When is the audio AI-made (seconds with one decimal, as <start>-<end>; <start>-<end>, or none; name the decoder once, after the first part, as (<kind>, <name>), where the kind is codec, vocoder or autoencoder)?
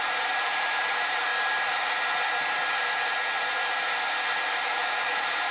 0.0-1.3 (vocoder, BigVGAN v2); 4.6-5.5